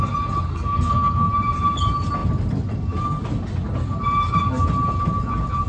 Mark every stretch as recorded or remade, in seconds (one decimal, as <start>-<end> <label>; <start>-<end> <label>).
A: 0.0-0.5 recorded; 0.5-1.3 remade; 1.3-5.7 recorded